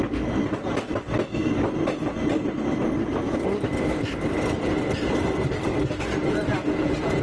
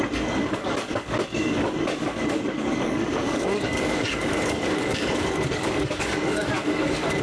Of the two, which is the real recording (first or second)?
first